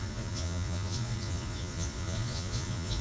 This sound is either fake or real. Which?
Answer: fake